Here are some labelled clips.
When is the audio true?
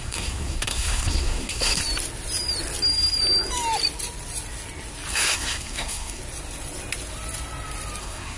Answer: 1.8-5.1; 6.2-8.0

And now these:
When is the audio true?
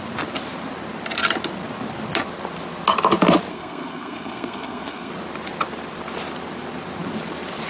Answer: 0.0-3.5; 5.1-7.7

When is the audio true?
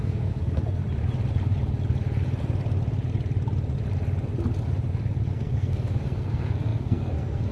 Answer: 0.8-5.3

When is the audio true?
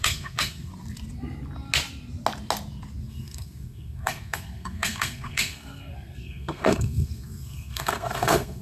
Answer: 0.7-3.0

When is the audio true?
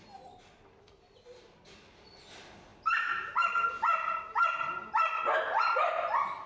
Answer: 0.0-6.5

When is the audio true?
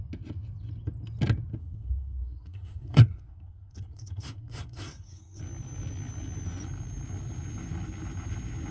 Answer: 0.0-1.6; 5.4-8.7